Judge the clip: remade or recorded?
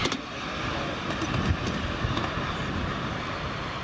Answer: recorded